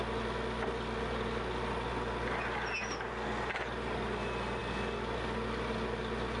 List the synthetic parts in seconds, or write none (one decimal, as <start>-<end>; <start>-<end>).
none